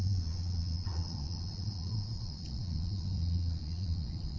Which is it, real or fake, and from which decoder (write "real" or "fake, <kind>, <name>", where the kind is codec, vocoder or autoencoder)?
fake, vocoder, Vocos